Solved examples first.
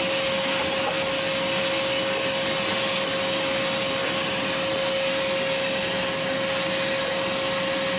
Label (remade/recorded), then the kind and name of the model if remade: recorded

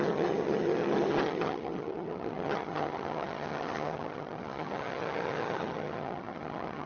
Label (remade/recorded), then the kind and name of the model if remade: remade, vocoder, HiFi-GAN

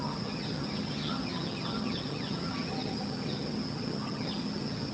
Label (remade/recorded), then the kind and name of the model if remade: remade, vocoder, HiFi-GAN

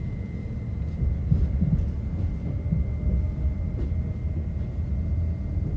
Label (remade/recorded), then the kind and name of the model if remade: recorded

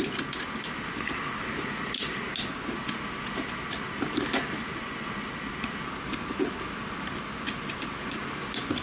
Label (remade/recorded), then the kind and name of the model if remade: recorded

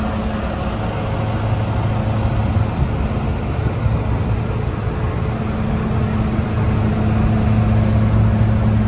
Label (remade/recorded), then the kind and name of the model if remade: recorded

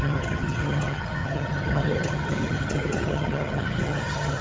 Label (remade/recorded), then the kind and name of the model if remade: remade, vocoder, HiFi-GAN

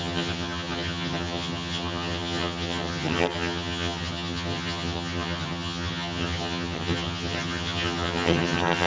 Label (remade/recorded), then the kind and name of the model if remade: remade, vocoder, HiFi-GAN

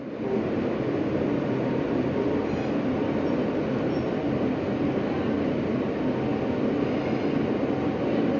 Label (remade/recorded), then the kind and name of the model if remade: recorded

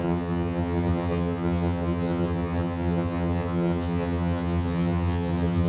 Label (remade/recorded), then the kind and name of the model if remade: remade, vocoder, HiFi-GAN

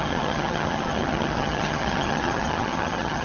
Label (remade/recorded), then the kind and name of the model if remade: remade, vocoder, HiFi-GAN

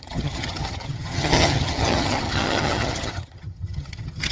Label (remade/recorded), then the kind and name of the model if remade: remade, vocoder, HiFi-GAN